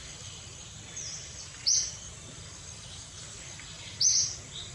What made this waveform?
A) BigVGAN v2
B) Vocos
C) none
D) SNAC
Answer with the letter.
C